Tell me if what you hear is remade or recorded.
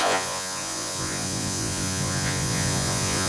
remade